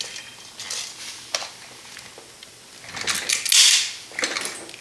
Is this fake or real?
real